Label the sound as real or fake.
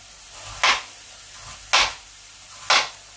real